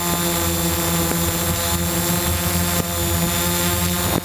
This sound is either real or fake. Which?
real